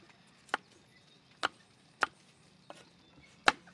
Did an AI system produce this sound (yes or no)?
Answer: no